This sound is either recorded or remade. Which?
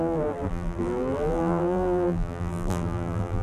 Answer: remade